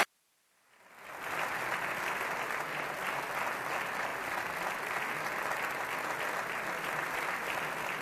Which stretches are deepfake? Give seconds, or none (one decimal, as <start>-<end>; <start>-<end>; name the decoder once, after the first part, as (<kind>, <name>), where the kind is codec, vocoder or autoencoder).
none